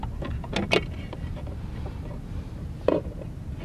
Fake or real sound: real